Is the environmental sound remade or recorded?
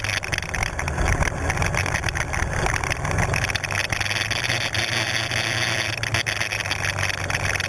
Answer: recorded